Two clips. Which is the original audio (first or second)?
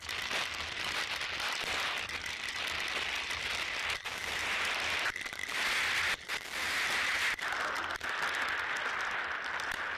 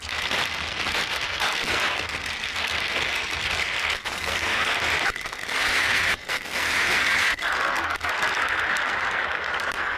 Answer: first